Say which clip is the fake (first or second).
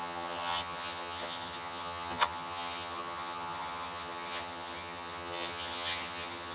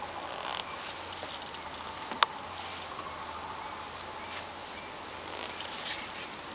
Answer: first